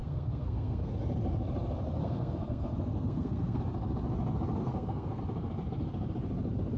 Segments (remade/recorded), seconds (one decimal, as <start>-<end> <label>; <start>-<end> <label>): 0.0-0.9 remade; 0.9-2.0 recorded; 2.0-3.6 remade; 3.6-4.6 recorded; 4.6-5.2 remade; 5.2-6.8 recorded